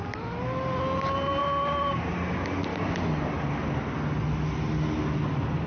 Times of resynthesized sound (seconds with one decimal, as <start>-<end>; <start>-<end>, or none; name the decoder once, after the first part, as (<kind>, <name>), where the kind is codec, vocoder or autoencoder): none